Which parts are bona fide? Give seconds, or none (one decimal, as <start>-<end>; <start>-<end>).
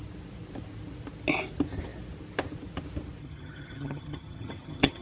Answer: 0.0-3.2